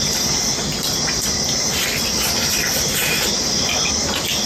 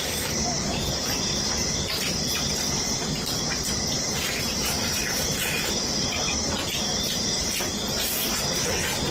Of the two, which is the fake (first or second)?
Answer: second